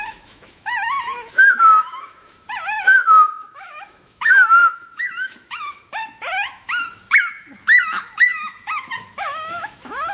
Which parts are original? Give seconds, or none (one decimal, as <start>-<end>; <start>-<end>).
none